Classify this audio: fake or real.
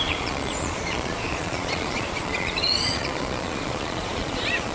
fake